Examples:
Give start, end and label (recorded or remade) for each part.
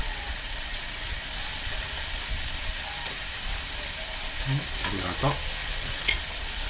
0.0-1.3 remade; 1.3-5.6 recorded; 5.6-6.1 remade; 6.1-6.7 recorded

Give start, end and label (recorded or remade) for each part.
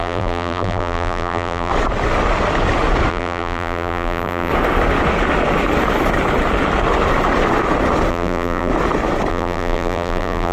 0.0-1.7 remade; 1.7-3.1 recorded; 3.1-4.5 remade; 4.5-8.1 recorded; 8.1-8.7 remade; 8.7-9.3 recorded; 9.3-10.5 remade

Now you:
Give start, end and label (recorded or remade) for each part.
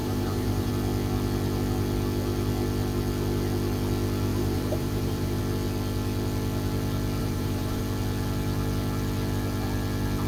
0.0-0.7 remade; 0.7-4.3 recorded; 4.3-5.4 remade; 5.4-7.2 recorded; 7.2-7.8 remade; 7.8-10.3 recorded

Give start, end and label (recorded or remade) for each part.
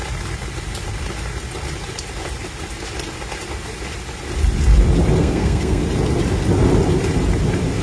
0.0-5.2 recorded; 5.2-5.8 remade; 5.8-7.8 recorded